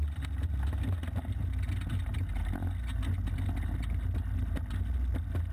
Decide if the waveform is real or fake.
real